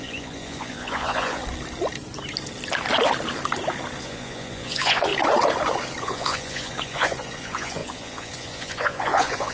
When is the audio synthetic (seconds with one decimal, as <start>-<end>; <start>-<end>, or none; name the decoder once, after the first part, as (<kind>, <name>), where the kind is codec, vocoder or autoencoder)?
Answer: 0.0-1.4 (vocoder, Vocos); 4.0-5.1; 6.0-9.5